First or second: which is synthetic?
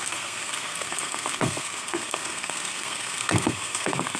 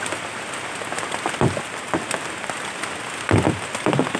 first